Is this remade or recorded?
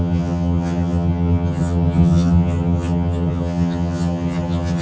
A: remade